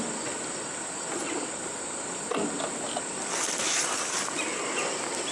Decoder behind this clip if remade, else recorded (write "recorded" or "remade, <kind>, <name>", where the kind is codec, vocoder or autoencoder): recorded